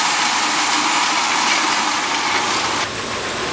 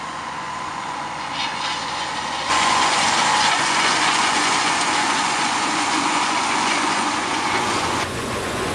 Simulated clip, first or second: second